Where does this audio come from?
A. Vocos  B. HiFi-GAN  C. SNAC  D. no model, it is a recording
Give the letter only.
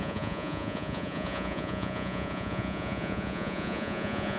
A